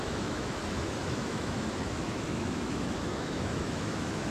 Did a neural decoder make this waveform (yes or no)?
yes